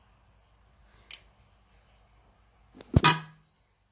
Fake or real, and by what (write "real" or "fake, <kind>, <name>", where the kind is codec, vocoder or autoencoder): real